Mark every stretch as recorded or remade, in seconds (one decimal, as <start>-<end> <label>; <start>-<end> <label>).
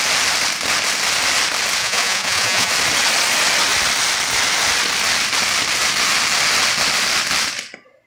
0.0-1.8 recorded; 1.8-2.7 remade; 2.7-8.1 recorded